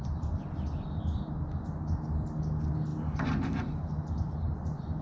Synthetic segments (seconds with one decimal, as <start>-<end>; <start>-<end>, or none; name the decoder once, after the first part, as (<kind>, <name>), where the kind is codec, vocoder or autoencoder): none